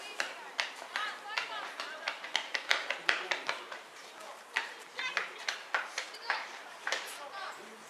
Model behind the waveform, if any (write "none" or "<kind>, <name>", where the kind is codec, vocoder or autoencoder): vocoder, BigVGAN v2